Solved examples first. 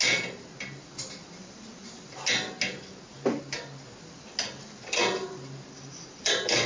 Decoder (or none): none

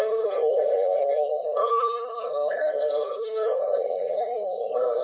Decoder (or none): codec, SNAC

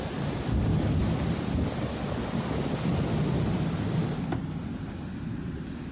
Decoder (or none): none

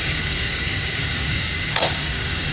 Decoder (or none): codec, DAC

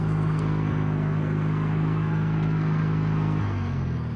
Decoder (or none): codec, SNAC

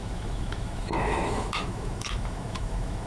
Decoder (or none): autoencoder, DAC-VAE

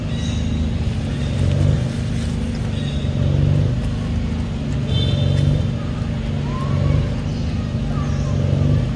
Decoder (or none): none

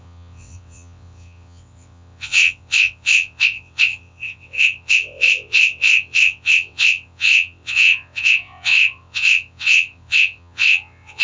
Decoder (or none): vocoder, WaveNeXt